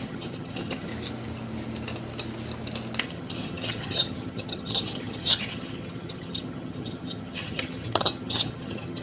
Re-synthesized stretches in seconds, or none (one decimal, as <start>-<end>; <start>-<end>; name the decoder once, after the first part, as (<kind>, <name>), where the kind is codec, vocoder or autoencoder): 0.0-0.9 (vocoder, HiFi-GAN); 3.0-9.0